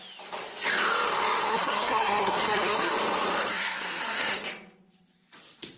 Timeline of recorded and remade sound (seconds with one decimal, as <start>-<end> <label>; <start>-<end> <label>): 0.0-1.5 recorded; 1.5-2.9 remade; 2.9-3.5 recorded; 3.5-4.4 remade; 4.4-5.8 recorded